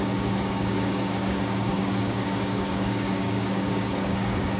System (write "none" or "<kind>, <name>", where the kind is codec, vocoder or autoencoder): codec, DAC